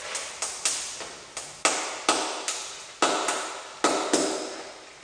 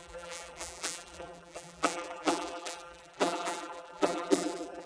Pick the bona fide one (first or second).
first